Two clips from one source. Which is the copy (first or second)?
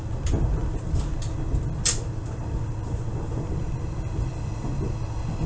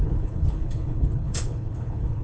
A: second